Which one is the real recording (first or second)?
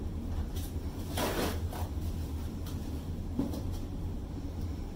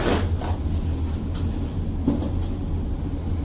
second